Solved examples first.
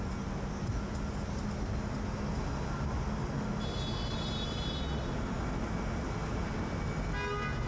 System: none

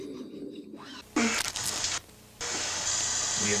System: none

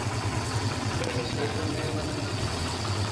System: vocoder, WaveNeXt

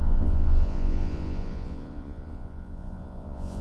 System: vocoder, Vocos